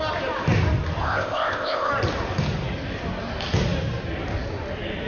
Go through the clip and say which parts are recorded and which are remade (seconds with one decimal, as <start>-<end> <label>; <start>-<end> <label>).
0.0-1.0 recorded; 1.0-1.9 remade; 1.9-5.1 recorded